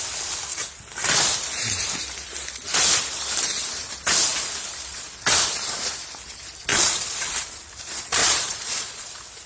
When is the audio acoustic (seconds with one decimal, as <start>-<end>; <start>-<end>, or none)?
0.0-6.7; 7.3-8.2; 9.1-9.5